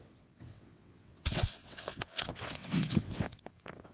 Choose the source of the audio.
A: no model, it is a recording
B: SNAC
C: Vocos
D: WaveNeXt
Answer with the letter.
D